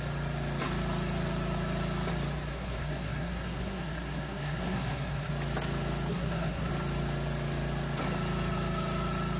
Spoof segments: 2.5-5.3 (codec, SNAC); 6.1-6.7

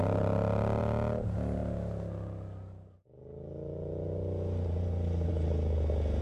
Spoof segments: none

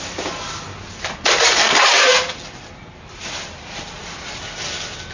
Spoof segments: none

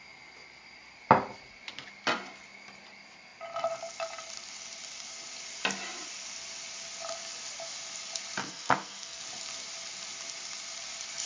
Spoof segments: 8.4-9.2 (codec, SNAC)

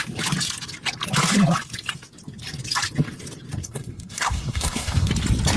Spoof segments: 3.6-5.1 (codec, SNAC)

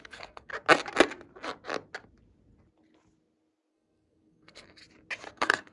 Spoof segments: 0.0-0.5 (codec, SNAC); 3.7-4.8; 5.3-5.7